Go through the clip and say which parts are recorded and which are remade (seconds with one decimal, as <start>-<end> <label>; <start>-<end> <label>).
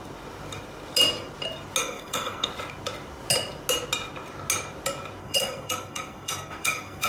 0.0-1.8 recorded; 1.8-2.5 remade; 2.5-5.2 recorded; 5.2-7.1 remade